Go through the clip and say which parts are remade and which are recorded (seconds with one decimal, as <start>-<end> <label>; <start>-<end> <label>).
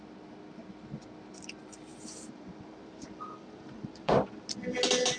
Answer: 0.0-1.9 recorded; 1.9-4.1 remade; 4.1-5.2 recorded